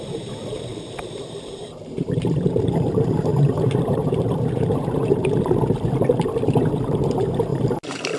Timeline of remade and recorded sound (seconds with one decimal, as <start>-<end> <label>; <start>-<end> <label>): 0.0-7.5 remade; 7.5-8.2 recorded